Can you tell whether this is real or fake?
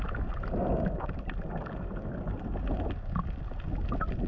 real